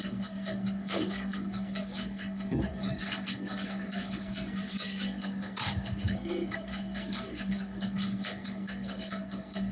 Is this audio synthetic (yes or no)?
yes